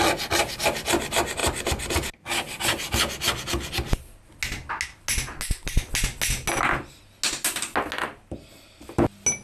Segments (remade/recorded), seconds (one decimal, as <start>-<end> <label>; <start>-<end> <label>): 0.0-9.4 recorded